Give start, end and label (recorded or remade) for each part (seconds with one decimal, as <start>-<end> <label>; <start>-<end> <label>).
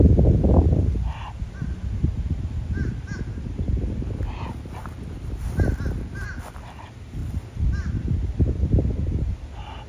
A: 0.0-7.2 recorded; 7.2-9.3 remade; 9.3-9.9 recorded